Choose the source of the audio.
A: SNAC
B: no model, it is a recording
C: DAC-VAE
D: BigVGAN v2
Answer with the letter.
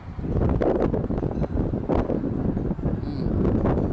B